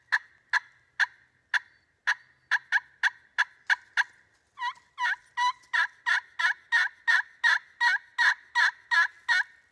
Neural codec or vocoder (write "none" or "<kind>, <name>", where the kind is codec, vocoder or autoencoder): none